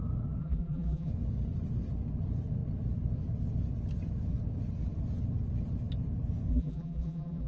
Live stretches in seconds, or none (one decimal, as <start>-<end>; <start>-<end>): 0.0-0.4; 1.1-6.5